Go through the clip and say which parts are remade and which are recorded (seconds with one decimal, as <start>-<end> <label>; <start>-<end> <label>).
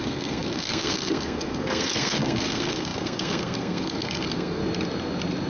0.0-4.6 remade; 4.6-5.5 recorded